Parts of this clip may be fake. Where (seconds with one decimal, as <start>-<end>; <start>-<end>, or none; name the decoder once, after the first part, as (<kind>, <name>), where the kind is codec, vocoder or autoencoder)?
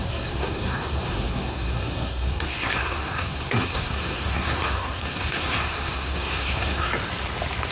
0.0-6.9 (codec, SNAC)